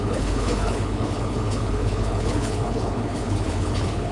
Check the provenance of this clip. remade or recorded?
remade